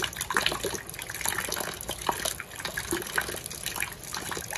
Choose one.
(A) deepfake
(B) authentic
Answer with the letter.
B